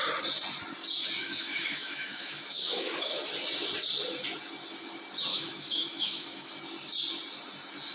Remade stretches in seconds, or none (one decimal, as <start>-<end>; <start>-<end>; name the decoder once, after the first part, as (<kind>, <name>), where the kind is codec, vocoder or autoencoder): 1.2-3.1 (autoencoder, DAC-VAE); 5.3-6.5